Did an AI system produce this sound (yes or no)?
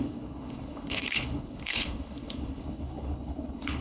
yes